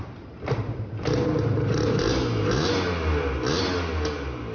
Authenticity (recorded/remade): recorded